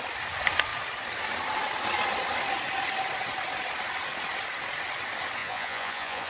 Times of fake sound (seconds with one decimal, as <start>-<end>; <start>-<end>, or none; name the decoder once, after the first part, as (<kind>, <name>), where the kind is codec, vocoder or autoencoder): 5.4-6.3 (vocoder, Vocos)